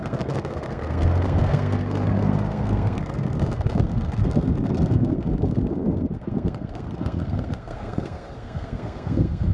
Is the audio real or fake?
fake